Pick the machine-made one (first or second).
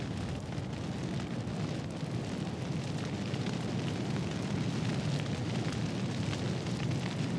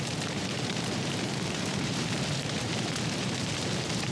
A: second